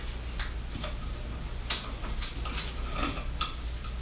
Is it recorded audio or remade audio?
recorded